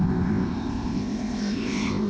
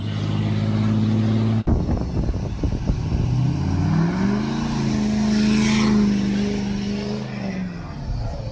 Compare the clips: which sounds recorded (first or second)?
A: second